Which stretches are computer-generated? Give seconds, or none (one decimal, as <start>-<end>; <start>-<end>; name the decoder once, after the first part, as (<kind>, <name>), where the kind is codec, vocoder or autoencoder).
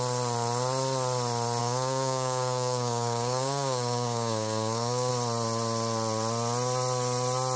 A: 1.6-5.1 (codec, DAC)